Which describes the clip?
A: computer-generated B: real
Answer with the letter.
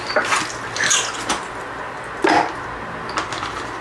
B